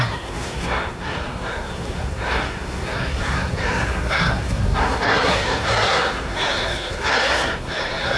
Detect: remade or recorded remade